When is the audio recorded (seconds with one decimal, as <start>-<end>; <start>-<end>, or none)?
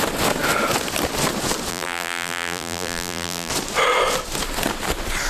0.0-1.7; 3.5-5.3